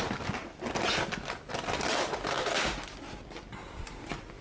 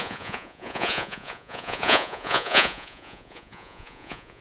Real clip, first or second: first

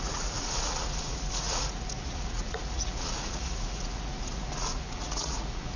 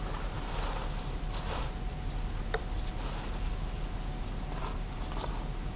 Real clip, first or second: second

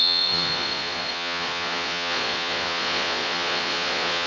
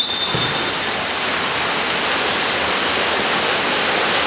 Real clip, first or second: second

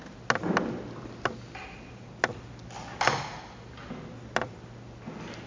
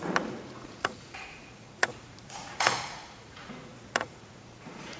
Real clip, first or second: first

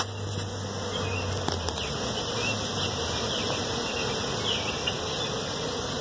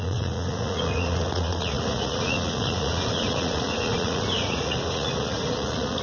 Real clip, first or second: first